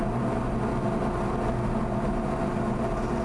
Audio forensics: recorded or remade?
recorded